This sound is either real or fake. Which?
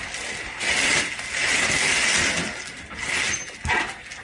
real